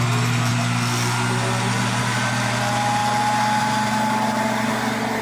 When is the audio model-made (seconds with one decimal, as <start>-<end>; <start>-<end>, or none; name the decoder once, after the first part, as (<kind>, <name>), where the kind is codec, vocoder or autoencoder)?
0.0-0.5 (vocoder, BigVGAN v2); 2.0-3.0; 3.6-5.2

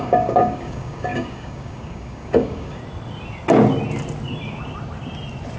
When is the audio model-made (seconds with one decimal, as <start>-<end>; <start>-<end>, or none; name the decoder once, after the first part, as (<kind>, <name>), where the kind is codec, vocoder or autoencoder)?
0.0-2.8 (codec, DAC)

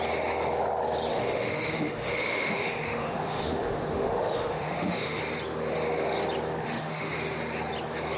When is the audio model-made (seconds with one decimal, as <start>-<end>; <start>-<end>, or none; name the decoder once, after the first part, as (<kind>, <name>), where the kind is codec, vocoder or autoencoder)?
1.1-5.2 (autoencoder, DAC-VAE); 6.6-7.1

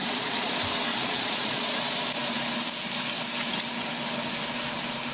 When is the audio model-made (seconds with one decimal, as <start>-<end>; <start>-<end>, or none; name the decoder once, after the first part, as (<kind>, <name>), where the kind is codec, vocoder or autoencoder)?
0.0-0.5 (vocoder, Vocos); 0.9-1.8

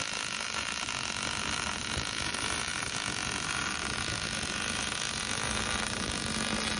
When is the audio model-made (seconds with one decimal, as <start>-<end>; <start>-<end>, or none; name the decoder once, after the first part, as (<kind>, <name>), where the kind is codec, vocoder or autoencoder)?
none

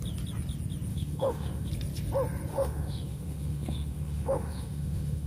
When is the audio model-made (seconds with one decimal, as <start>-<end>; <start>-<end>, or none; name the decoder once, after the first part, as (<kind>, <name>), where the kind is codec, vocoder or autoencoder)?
0.9-1.7 (autoencoder, DAC-VAE); 2.5-5.3

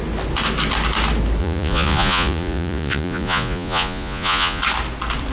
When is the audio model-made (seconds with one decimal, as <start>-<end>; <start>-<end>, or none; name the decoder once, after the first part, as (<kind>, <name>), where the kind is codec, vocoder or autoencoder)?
1.4-4.6 (vocoder, Vocos)